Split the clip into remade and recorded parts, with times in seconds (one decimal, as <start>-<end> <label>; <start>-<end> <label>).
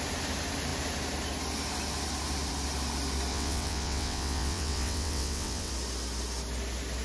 0.0-3.3 recorded; 3.3-5.7 remade; 5.7-7.0 recorded